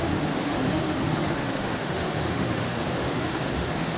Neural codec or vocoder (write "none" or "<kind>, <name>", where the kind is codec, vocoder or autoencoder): autoencoder, DAC-VAE